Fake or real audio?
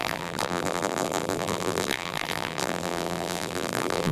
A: fake